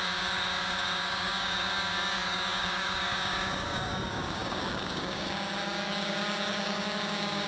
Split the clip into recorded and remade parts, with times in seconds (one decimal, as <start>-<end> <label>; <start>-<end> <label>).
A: 0.0-7.5 remade